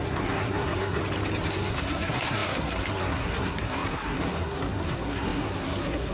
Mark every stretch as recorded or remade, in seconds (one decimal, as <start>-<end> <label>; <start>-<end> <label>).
0.0-1.0 remade; 1.0-1.5 recorded; 1.5-6.1 remade